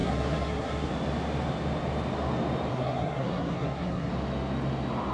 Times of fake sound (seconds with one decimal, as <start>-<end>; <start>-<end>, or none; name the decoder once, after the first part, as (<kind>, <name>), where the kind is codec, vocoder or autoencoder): 0.0-0.9 (codec, SNAC); 2.7-4.1